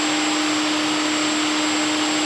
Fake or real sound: real